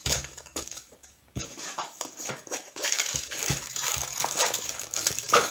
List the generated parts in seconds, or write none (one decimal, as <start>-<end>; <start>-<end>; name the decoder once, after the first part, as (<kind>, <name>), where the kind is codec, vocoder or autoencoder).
0.0-5.5 (codec, DAC)